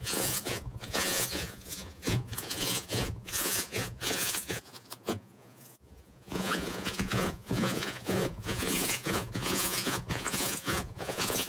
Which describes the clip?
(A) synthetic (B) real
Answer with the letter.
A